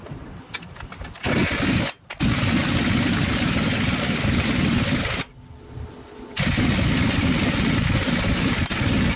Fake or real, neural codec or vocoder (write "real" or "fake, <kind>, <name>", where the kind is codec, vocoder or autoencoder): real